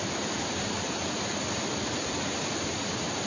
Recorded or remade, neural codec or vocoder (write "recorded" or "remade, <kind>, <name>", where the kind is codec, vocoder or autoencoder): recorded